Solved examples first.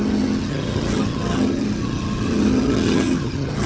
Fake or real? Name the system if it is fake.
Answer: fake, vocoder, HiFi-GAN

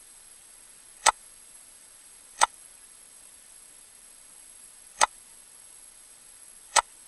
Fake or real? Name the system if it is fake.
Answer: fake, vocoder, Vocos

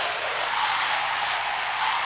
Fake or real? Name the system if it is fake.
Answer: fake, vocoder, BigVGAN v2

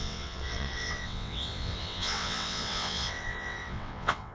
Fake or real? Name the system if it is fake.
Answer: fake, vocoder, WaveNeXt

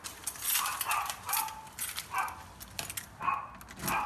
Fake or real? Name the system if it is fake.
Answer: real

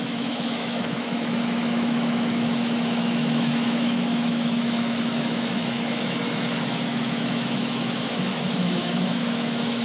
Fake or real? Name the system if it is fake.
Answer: fake, autoencoder, DAC-VAE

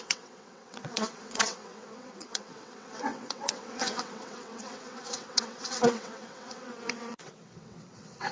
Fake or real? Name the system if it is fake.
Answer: fake, vocoder, WaveNeXt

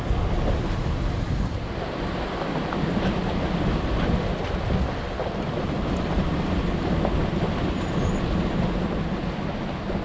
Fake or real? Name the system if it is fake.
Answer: real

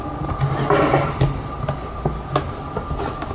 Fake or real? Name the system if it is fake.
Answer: real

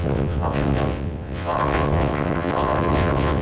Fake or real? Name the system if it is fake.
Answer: fake, vocoder, WaveNeXt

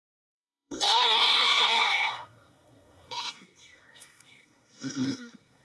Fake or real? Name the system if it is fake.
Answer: fake, codec, SNAC